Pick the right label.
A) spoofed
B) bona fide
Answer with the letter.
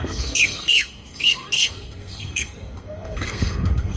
A